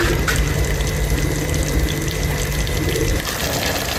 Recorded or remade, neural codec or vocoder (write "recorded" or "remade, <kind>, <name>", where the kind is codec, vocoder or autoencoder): remade, vocoder, BigVGAN v2